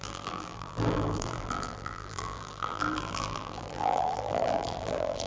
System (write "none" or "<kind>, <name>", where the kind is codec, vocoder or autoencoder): vocoder, BigVGAN v2